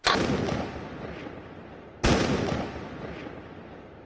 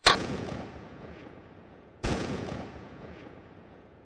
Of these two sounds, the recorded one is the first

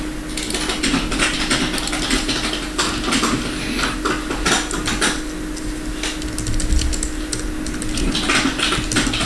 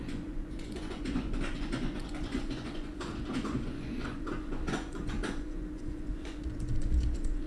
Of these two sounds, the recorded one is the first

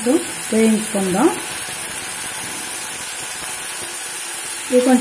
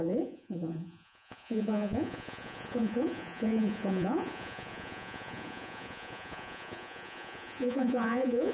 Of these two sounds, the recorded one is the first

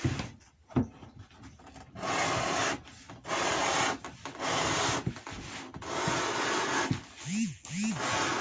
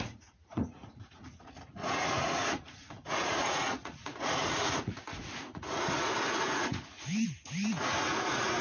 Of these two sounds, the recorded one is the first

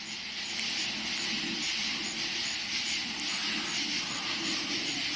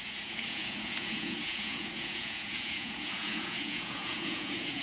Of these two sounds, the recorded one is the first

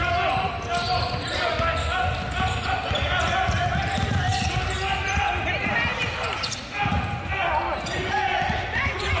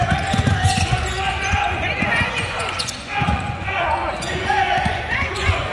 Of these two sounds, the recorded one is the first